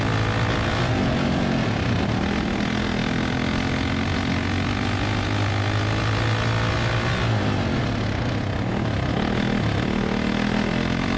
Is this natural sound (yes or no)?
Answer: yes